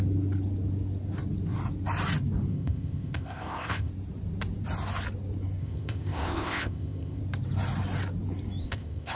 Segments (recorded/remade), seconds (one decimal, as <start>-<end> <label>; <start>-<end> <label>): 0.0-2.5 recorded; 2.5-3.9 remade; 3.9-5.6 recorded; 5.6-7.2 remade; 7.2-8.6 recorded; 8.6-9.1 remade